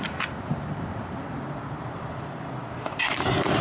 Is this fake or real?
fake